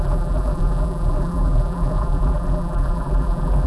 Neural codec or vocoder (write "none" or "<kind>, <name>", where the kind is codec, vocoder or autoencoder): vocoder, BigVGAN v2